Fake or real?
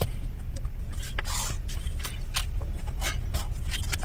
real